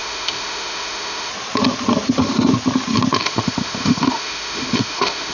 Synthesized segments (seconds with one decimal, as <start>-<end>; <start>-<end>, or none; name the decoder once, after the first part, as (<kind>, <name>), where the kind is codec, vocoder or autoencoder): 0.0-1.3 (autoencoder, DAC-VAE); 3.2-5.3